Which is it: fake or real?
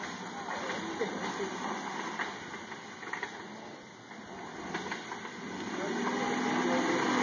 real